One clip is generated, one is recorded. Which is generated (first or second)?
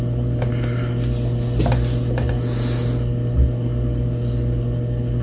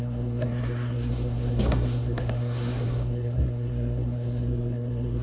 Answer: second